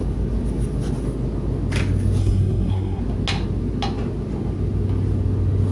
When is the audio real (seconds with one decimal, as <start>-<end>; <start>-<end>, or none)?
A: 0.0-2.2; 3.0-5.7